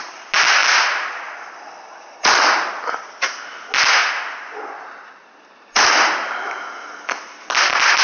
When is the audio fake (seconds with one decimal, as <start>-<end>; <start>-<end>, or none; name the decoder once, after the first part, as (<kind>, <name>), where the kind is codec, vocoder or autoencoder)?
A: 4.0-4.5 (vocoder, Vocos)